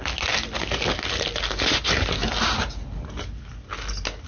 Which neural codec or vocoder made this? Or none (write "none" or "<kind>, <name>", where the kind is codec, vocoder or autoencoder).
none